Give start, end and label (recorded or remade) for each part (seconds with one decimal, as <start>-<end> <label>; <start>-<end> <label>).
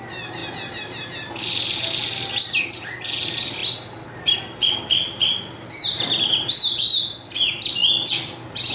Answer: 0.0-8.7 recorded